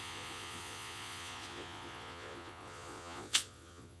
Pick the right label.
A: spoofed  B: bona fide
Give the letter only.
A